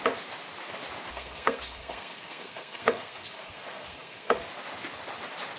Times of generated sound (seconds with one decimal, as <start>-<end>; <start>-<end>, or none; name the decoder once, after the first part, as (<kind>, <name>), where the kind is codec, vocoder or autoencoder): 1.1-4.4 (codec, SNAC)